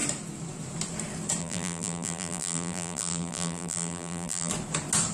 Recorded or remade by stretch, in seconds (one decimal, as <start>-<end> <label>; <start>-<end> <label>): 0.0-1.4 recorded; 1.4-4.5 remade; 4.5-5.1 recorded